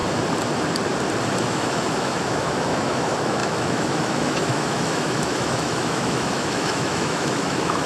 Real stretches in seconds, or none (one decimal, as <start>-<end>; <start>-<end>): 0.0-1.5